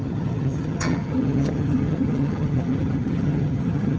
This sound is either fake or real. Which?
fake